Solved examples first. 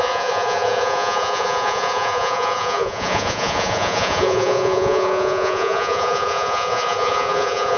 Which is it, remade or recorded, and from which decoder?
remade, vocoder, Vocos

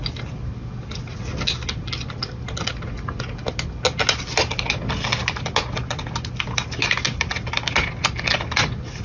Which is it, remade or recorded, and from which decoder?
recorded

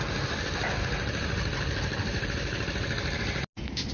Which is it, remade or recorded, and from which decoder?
recorded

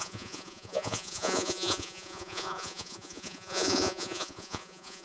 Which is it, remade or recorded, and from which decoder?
remade, vocoder, Vocos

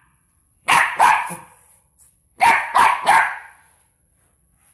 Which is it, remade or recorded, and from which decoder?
remade, vocoder, Vocos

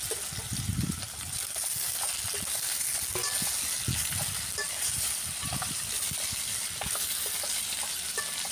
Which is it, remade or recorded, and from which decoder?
recorded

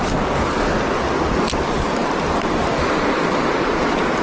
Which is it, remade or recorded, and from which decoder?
recorded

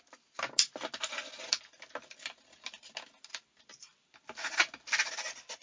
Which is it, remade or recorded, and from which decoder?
recorded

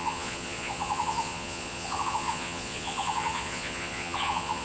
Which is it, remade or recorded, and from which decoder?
remade, vocoder, Vocos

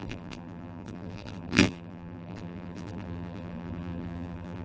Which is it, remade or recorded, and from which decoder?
remade, vocoder, BigVGAN v2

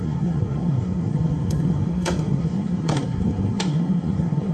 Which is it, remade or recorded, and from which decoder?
remade, codec, SNAC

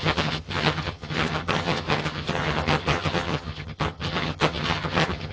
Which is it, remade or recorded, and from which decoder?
remade, vocoder, HiFi-GAN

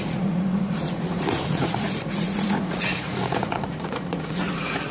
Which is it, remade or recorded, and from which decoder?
remade, vocoder, Vocos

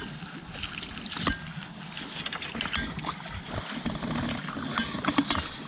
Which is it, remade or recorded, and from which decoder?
recorded